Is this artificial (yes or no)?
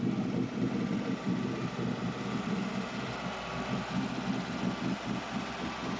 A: no